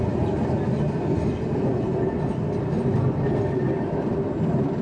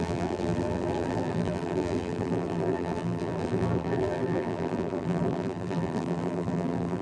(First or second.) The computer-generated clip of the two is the second